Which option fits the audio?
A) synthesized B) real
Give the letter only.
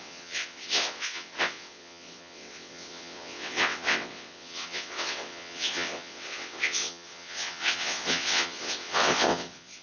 A